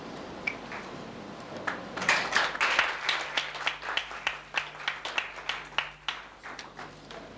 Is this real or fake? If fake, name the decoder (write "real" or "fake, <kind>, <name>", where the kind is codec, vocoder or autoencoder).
real